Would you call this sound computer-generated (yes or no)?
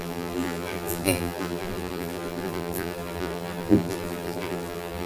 yes